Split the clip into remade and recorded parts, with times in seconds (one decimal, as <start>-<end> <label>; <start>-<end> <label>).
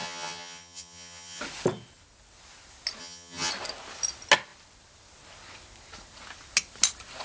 0.0-1.4 remade; 1.4-3.0 recorded; 3.0-3.5 remade; 3.5-7.2 recorded